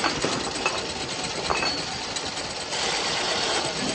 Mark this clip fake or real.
real